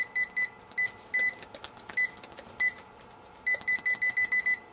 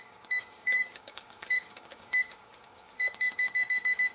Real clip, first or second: first